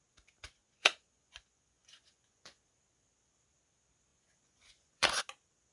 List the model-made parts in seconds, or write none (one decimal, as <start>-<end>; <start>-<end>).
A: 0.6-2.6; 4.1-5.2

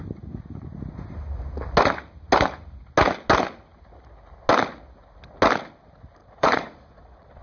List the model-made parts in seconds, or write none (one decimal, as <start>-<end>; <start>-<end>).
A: 6.2-7.4

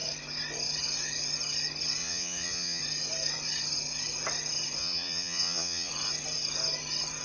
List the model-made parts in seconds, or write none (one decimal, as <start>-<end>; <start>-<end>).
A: 2.0-2.8; 4.8-5.9